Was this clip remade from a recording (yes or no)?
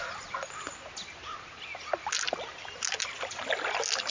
no